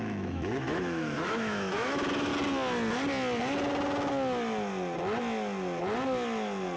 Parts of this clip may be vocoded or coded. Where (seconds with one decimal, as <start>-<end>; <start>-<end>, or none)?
0.0-2.3